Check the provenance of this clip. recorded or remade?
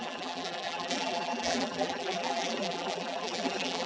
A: remade